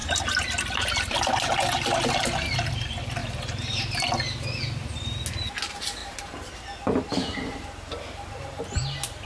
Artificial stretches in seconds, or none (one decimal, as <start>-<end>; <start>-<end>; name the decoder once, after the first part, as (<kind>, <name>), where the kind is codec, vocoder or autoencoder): 6.0-6.5 (vocoder, BigVGAN v2); 7.3-8.6